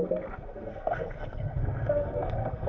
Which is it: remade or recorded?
remade